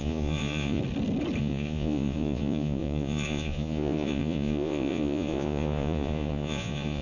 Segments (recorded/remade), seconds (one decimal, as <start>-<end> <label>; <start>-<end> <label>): 0.0-0.8 remade; 0.8-1.4 recorded; 1.4-7.0 remade